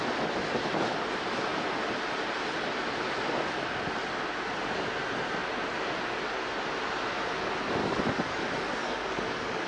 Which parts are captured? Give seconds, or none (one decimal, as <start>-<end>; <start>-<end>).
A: 0.0-7.8; 8.4-8.8